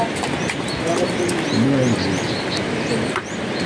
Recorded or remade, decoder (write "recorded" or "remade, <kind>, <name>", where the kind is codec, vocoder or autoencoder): remade, vocoder, BigVGAN v2